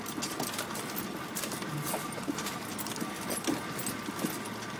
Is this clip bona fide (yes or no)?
yes